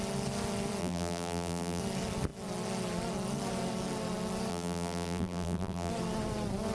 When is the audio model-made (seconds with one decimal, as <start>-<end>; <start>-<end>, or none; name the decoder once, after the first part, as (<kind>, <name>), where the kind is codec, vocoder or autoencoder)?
0.8-1.8 (vocoder, BigVGAN v2); 4.5-5.9